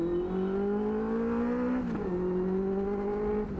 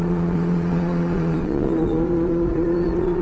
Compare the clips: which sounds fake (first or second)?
second